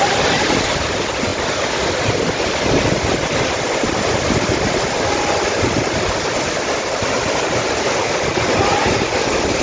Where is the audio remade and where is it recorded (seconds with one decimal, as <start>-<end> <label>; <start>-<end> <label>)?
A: 0.0-9.6 recorded